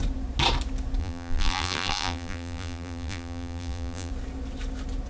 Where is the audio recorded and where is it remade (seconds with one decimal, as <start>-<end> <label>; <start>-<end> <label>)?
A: 0.0-1.0 recorded; 1.0-4.1 remade; 4.1-5.1 recorded